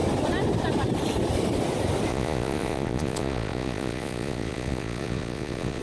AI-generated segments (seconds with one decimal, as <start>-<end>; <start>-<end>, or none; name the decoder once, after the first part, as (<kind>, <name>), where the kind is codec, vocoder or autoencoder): 2.1-5.8 (vocoder, Vocos)